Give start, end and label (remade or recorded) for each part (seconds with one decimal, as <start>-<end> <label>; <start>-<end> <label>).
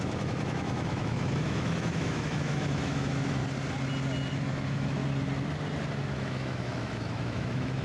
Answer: 0.0-3.4 remade; 3.4-4.3 recorded; 4.3-5.0 remade; 5.0-6.0 recorded; 6.0-7.8 remade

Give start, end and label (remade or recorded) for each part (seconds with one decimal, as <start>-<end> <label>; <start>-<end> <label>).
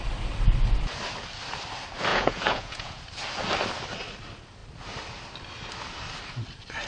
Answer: 0.0-2.1 recorded; 2.1-3.0 remade; 3.0-6.9 recorded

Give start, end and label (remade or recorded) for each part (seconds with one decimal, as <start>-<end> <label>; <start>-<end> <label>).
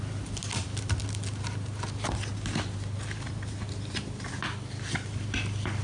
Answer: 0.0-5.8 recorded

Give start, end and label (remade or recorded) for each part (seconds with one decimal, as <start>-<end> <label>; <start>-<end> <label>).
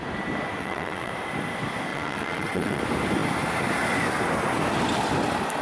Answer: 0.0-0.6 recorded; 0.6-1.1 remade; 1.1-1.9 recorded; 1.9-2.8 remade; 2.8-5.6 recorded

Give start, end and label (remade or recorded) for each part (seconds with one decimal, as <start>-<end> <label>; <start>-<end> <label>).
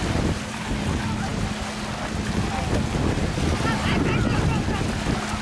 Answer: 0.0-5.4 recorded